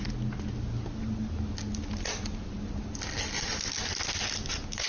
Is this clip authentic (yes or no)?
yes